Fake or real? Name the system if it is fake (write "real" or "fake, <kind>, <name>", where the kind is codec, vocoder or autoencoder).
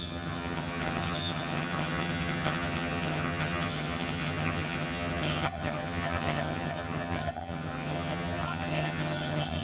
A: fake, vocoder, HiFi-GAN